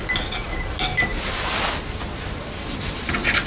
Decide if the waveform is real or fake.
real